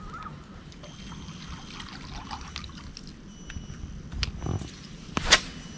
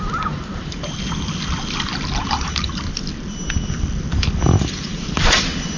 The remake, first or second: second